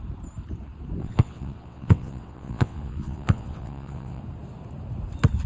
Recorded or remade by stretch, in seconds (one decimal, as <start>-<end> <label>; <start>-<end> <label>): 0.0-1.0 recorded; 1.0-4.2 remade; 4.2-5.5 recorded